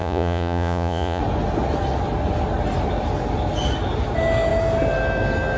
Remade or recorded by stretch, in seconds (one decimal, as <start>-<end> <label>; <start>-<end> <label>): 0.0-1.2 remade; 1.2-5.6 recorded